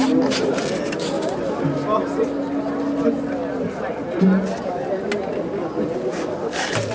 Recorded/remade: recorded